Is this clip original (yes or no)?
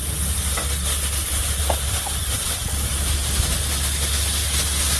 yes